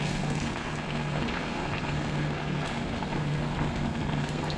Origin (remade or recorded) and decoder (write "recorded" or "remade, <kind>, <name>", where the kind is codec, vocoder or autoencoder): remade, codec, SNAC